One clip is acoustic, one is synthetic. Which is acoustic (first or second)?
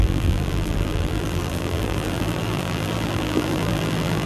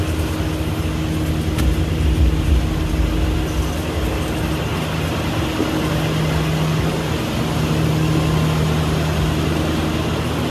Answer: second